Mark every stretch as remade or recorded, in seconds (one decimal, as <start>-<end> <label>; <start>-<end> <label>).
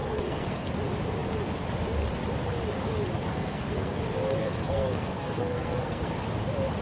0.0-0.7 remade; 0.7-3.3 recorded; 3.3-4.0 remade; 4.0-4.4 recorded; 4.4-6.1 remade; 6.1-6.8 recorded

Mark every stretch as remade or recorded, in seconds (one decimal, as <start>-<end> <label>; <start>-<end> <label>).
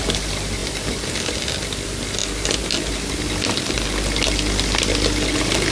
0.0-5.7 recorded